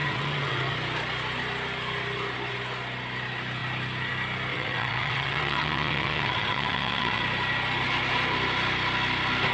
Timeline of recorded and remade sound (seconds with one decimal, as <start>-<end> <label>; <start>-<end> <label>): 0.0-0.7 remade; 0.7-4.5 recorded; 4.5-7.2 remade; 7.2-9.5 recorded